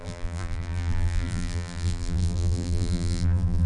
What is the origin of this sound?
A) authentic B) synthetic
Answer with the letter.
B